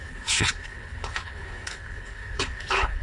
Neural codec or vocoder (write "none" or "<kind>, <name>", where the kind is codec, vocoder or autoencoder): codec, HILCodec